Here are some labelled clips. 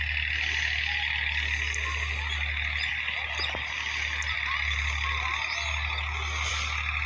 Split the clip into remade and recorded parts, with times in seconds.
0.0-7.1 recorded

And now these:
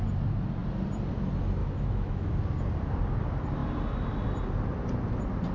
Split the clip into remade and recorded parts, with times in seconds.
0.0-1.6 recorded; 1.6-2.3 remade; 2.3-5.5 recorded

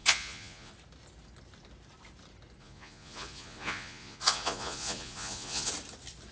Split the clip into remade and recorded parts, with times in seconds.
0.0-0.7 remade; 0.7-2.6 recorded; 2.6-5.7 remade; 5.7-6.3 recorded

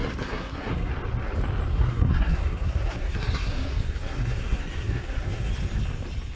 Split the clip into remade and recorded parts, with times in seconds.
0.0-0.9 remade; 0.9-1.7 recorded; 1.7-5.5 remade; 5.5-6.4 recorded